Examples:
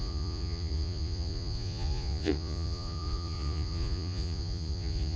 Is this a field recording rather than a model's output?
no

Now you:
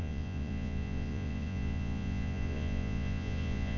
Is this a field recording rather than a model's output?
no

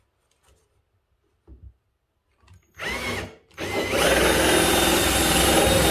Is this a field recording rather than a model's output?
yes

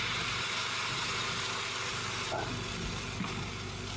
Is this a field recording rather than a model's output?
yes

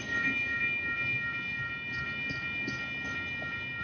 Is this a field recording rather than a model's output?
yes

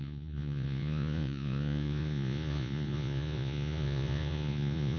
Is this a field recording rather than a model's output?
no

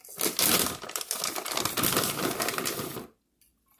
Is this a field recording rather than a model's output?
yes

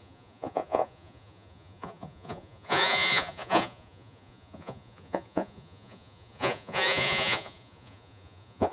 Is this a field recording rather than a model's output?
no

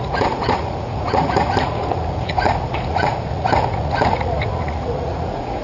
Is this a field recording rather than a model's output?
no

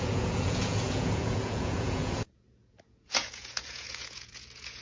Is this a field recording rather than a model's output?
no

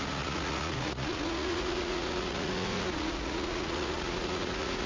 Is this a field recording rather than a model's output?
no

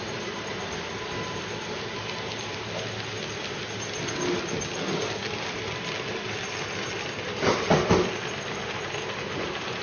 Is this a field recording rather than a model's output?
yes